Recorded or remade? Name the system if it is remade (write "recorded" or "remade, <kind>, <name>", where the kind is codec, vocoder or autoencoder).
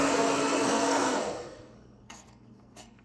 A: remade, codec, SNAC